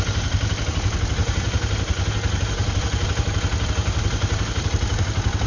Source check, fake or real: real